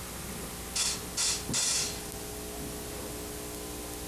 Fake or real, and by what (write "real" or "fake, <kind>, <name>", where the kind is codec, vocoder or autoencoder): real